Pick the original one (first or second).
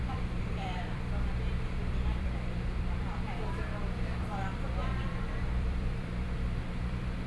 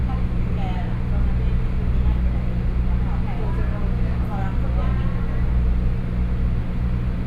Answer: second